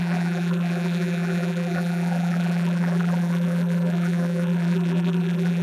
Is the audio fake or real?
fake